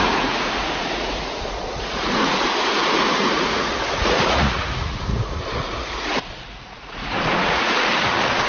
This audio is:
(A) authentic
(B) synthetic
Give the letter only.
B